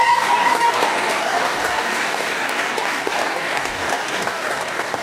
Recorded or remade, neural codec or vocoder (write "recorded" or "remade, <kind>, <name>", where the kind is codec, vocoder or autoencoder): remade, codec, DAC